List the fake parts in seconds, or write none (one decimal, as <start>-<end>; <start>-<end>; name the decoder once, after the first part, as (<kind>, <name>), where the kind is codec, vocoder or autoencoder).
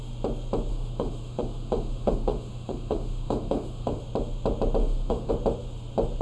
0.7-4.0 (autoencoder, DAC-VAE); 4.8-5.3